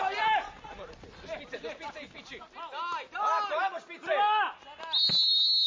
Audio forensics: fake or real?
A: real